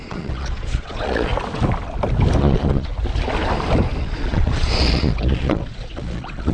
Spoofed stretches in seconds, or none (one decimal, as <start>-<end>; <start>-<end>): 0.0-1.3; 2.4-2.9; 4.0-6.5